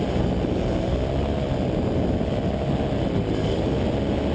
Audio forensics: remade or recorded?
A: recorded